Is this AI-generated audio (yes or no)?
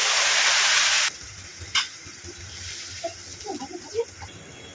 no